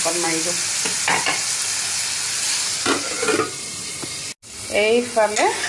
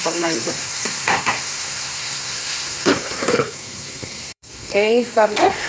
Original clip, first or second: first